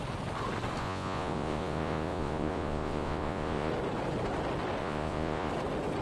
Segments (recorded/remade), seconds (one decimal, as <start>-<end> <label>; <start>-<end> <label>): 0.0-0.8 recorded; 0.8-3.7 remade; 3.7-4.8 recorded; 4.8-5.5 remade; 5.5-6.0 recorded